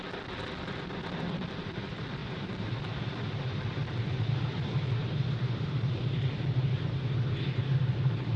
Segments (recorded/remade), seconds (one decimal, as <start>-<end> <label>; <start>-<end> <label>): 0.0-2.2 recorded; 2.2-2.7 remade; 2.7-5.0 recorded; 5.0-6.0 remade; 6.0-8.4 recorded